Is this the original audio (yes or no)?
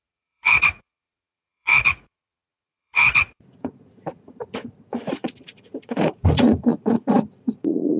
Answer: no